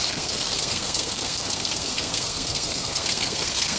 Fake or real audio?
fake